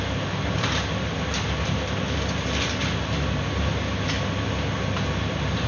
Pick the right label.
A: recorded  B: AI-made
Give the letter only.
A